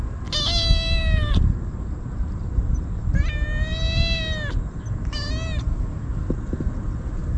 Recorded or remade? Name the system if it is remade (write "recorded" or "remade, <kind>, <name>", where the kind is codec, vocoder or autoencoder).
recorded